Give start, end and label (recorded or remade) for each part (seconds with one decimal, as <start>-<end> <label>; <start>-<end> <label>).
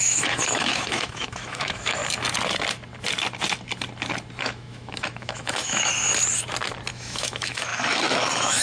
0.0-2.0 remade; 2.0-4.4 recorded; 4.4-5.9 remade; 5.9-6.9 recorded; 6.9-8.6 remade